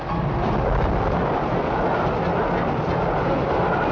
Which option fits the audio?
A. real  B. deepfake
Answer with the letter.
A